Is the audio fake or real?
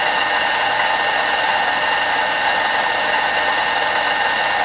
real